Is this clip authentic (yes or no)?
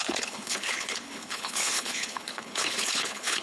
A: no